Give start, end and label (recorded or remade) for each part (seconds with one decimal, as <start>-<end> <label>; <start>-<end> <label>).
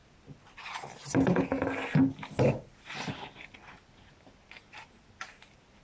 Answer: 0.0-5.8 recorded